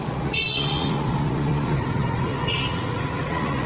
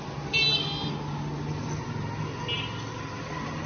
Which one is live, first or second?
second